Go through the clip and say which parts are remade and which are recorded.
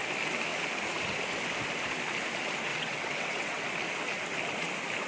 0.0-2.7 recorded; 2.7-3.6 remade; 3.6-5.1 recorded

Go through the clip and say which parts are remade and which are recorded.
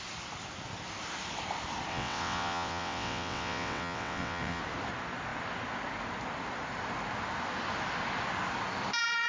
0.0-1.9 recorded; 1.9-4.6 remade; 4.6-9.3 recorded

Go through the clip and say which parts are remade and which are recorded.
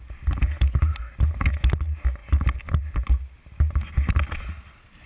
0.0-5.1 recorded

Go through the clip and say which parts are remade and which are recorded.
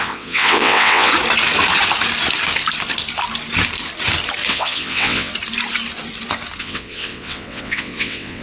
0.0-1.1 remade; 1.1-4.5 recorded; 4.5-5.3 remade; 5.3-6.6 recorded; 6.6-8.4 remade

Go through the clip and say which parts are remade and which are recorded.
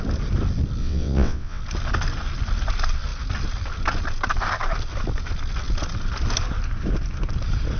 0.0-0.8 recorded; 0.8-1.6 remade; 1.6-7.8 recorded